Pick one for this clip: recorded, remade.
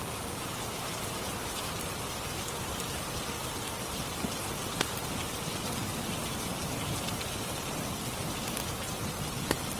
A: recorded